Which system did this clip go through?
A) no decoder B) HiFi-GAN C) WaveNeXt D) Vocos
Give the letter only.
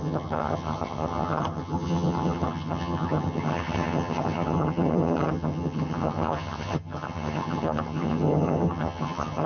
B